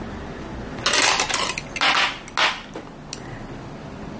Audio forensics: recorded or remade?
recorded